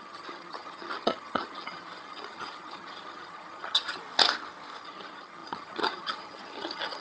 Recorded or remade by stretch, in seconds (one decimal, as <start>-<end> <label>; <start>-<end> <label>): 0.0-4.0 remade; 4.0-4.8 recorded; 4.8-7.0 remade

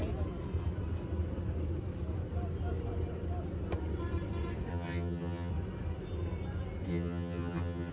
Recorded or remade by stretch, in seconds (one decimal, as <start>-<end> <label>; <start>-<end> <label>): 0.0-4.7 recorded; 4.7-5.5 remade; 5.5-6.9 recorded; 6.9-7.9 remade